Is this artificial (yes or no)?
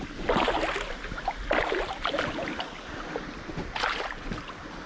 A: no